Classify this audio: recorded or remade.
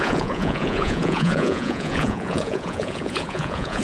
remade